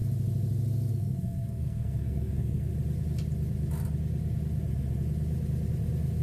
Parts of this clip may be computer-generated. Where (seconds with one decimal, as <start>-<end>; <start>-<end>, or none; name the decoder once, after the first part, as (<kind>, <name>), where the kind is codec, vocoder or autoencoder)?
0.9-2.7 (codec, SNAC)